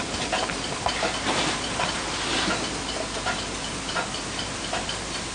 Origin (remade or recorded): recorded